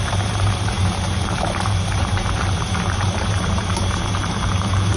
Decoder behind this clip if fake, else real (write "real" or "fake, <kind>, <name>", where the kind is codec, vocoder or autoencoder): fake, vocoder, BigVGAN v2